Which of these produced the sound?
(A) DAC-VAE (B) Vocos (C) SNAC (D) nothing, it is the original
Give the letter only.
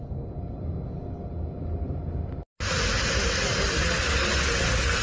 D